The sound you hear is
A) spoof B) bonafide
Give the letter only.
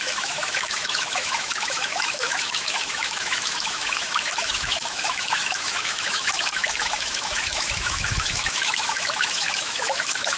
A